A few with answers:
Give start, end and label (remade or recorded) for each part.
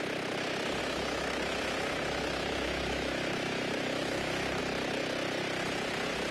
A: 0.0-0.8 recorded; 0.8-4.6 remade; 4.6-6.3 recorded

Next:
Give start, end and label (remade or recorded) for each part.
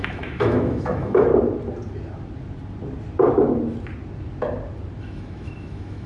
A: 0.0-1.3 remade; 1.3-5.0 recorded; 5.0-6.1 remade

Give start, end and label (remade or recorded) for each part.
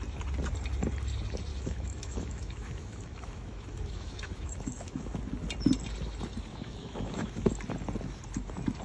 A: 0.0-1.5 recorded; 1.5-5.2 remade; 5.2-6.5 recorded; 6.5-7.5 remade; 7.5-8.8 recorded